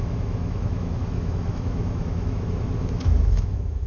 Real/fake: fake